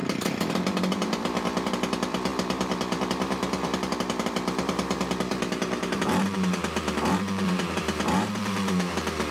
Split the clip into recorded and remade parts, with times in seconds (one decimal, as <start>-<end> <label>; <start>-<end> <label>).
0.0-9.3 remade